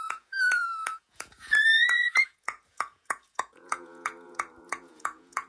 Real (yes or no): no